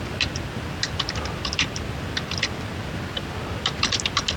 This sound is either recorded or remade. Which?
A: recorded